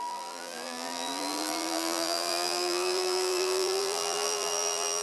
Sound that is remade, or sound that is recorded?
remade